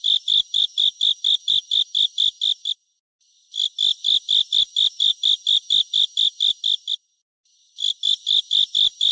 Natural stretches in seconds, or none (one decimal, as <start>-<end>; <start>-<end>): 0.0-9.1